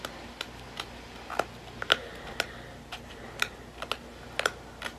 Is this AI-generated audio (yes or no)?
no